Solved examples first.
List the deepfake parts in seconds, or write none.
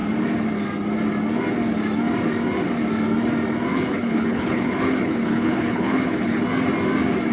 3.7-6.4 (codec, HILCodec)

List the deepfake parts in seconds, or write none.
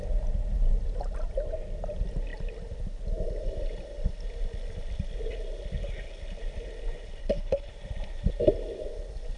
7.2-7.7 (codec, HILCodec)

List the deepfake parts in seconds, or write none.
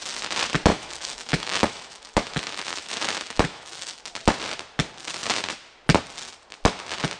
0.7-4.0 (autoencoder, DAC-VAE)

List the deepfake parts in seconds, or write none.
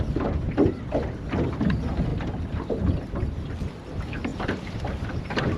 4.3-5.6 (vocoder, BigVGAN v2)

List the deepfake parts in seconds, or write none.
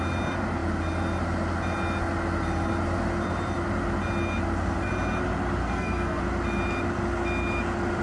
5.6-6.2 (codec, SNAC)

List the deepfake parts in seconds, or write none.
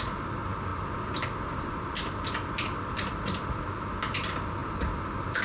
none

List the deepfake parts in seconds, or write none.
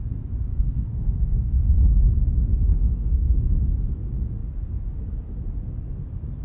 0.5-1.7 (codec, SNAC); 2.7-3.5